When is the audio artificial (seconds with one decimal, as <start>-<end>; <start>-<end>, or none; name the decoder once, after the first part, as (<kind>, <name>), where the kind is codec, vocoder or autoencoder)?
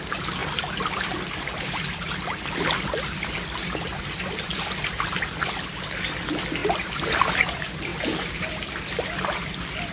0.4-2.6 (vocoder, BigVGAN v2); 3.9-4.5; 6.6-7.2; 7.9-8.5